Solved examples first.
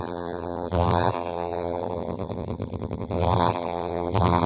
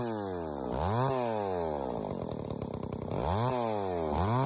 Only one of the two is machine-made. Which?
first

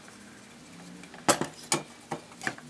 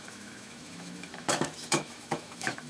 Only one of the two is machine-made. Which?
second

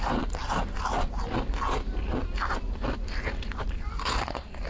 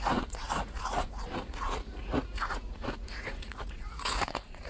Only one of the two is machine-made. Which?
second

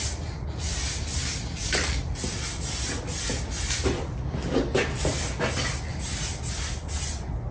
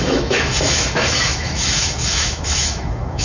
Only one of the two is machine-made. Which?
second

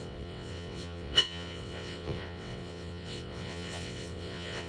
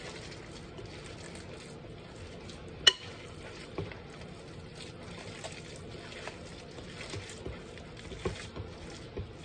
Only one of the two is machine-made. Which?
first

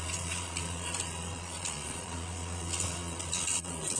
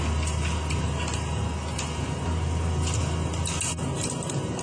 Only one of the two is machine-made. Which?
first